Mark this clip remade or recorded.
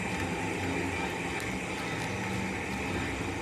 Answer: recorded